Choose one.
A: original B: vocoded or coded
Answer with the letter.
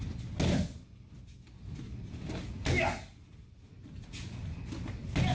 A